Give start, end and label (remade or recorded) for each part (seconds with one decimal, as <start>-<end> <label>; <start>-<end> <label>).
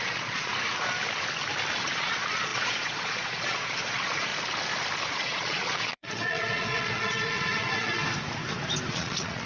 0.0-0.5 remade; 0.5-1.7 recorded; 1.7-4.3 remade; 4.3-5.1 recorded; 5.1-8.0 remade; 8.0-8.9 recorded; 8.9-9.5 remade